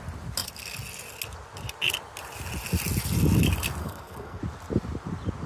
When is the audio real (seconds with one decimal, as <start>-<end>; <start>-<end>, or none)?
0.0-3.8; 4.4-5.5